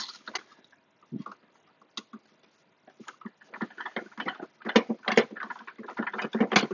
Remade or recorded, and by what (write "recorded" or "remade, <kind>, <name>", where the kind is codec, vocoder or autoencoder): recorded